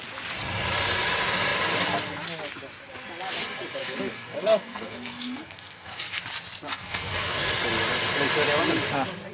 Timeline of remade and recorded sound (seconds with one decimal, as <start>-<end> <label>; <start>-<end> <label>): 0.0-3.8 recorded; 3.8-6.2 remade; 6.2-6.7 recorded; 6.7-7.5 remade; 7.5-9.3 recorded